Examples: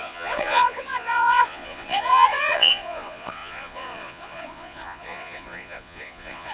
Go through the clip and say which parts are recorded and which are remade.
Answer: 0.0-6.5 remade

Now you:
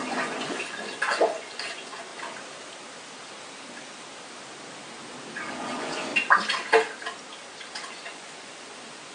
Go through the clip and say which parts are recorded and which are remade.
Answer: 0.0-2.1 remade; 2.1-5.5 recorded; 5.5-6.1 remade; 6.1-7.9 recorded; 7.9-9.1 remade

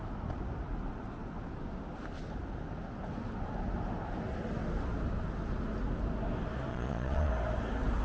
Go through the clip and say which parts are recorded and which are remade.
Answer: 0.0-6.7 recorded; 6.7-7.3 remade; 7.3-8.0 recorded

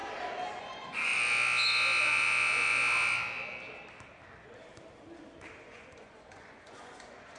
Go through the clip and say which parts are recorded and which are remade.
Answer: 0.0-0.6 recorded; 0.6-1.1 remade; 1.1-2.0 recorded; 2.0-2.8 remade; 2.8-5.6 recorded; 5.6-7.4 remade

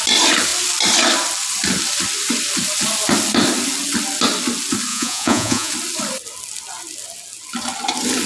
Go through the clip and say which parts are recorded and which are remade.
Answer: 0.0-4.9 recorded; 4.9-5.7 remade; 5.7-8.3 recorded

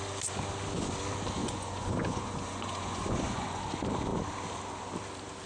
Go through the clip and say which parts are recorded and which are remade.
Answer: 0.0-1.4 recorded; 1.4-3.6 remade; 3.6-5.5 recorded